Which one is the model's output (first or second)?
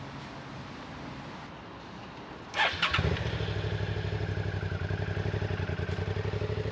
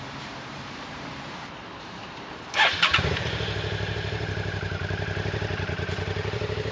second